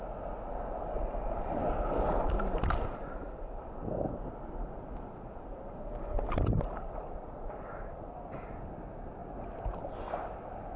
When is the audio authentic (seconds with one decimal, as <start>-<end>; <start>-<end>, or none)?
0.0-10.8